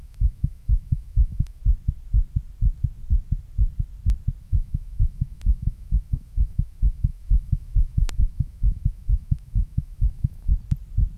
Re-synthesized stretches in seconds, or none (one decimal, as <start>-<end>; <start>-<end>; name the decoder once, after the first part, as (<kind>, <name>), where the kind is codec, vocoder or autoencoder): 0.0-1.6 (autoencoder, DAC-VAE); 4.4-10.5

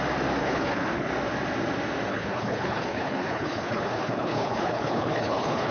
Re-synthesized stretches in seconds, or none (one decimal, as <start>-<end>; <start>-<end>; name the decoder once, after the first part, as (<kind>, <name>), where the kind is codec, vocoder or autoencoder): 0.4-1.1 (codec, HILCodec); 2.1-5.7

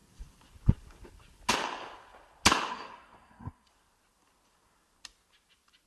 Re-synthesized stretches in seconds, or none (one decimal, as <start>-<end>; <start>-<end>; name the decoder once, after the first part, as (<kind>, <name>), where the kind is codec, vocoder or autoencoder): 2.7-3.7 (codec, SNAC)

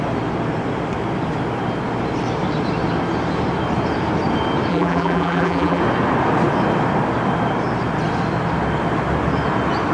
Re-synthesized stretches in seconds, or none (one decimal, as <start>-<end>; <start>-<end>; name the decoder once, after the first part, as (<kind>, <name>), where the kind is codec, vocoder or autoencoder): 4.7-5.8 (vocoder, BigVGAN v2)

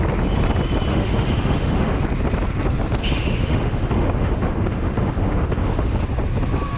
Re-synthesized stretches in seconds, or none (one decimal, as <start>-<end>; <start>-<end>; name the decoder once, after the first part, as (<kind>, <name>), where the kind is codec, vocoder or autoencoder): 0.9-2.0 (autoencoder, DAC-VAE); 3.0-6.0